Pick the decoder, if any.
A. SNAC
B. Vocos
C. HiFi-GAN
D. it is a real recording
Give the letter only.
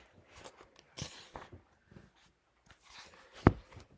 D